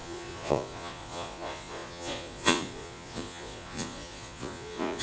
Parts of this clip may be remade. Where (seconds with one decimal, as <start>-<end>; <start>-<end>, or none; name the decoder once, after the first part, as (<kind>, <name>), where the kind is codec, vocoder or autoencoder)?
0.0-5.0 (vocoder, Vocos)